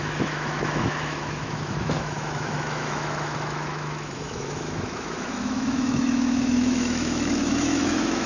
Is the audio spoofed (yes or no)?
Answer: yes